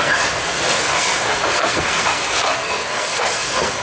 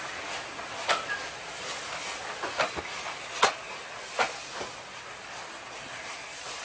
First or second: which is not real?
first